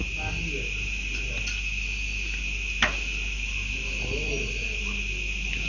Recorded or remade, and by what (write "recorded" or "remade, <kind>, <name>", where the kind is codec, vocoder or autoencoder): recorded